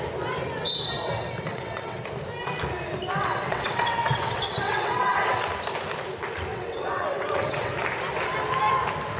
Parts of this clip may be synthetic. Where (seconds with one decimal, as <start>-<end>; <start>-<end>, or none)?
1.5-2.0; 3.2-5.5; 6.5-7.7